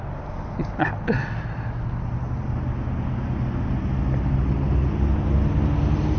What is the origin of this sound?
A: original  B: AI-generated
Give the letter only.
A